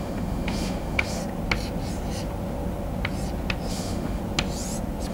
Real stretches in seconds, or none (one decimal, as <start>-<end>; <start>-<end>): 1.2-3.7; 4.2-5.1